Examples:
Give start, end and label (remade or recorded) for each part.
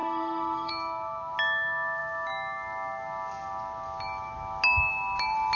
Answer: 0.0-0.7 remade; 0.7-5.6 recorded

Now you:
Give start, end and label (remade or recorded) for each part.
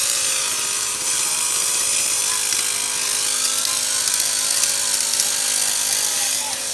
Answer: 0.0-2.2 remade; 2.2-6.1 recorded; 6.1-6.7 remade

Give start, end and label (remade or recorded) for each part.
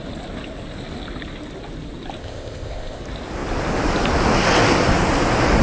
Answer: 0.0-2.2 recorded; 2.2-3.0 remade; 3.0-5.6 recorded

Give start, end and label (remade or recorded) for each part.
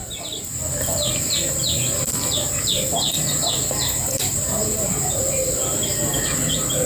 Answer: 0.0-4.1 recorded; 4.1-5.6 remade; 5.6-6.9 recorded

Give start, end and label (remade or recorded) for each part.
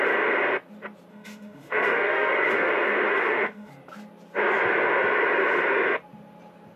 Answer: 0.0-1.1 recorded; 1.1-2.7 remade; 2.7-3.1 recorded; 3.1-3.7 remade; 3.7-6.8 recorded